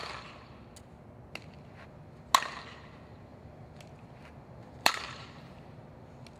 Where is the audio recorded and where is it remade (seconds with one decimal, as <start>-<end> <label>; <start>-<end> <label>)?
0.0-4.6 recorded; 4.6-5.8 remade; 5.8-6.4 recorded